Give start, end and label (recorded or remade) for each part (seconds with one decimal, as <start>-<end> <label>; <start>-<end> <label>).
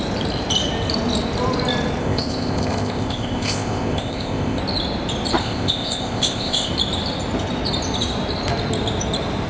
0.0-2.0 recorded; 2.0-4.6 remade; 4.6-5.4 recorded; 5.4-6.7 remade; 6.7-9.5 recorded